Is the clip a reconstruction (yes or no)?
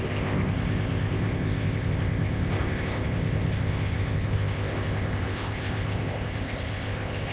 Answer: yes